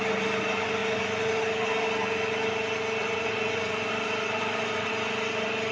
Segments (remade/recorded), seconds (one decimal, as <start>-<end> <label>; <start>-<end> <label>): 0.0-3.0 recorded; 3.0-4.9 remade; 4.9-5.7 recorded